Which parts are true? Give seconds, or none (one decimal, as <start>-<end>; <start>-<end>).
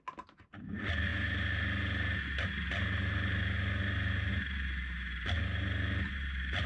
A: 0.0-6.7